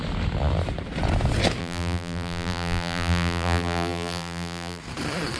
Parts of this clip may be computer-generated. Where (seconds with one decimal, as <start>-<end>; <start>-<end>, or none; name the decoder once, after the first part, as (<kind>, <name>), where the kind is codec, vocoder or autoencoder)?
1.6-4.8 (vocoder, BigVGAN v2)